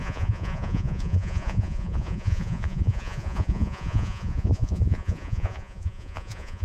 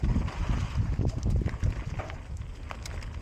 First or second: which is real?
second